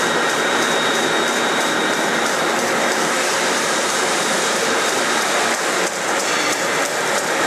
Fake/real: fake